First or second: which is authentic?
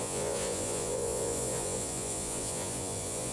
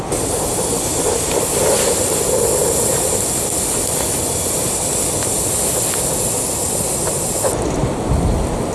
second